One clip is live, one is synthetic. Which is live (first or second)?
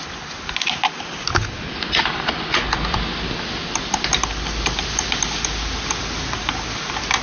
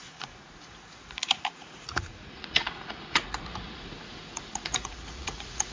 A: first